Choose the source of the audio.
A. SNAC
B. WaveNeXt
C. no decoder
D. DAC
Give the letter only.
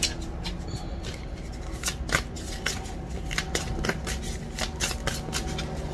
C